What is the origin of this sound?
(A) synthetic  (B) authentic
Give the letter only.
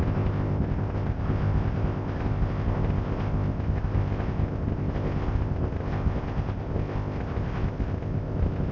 A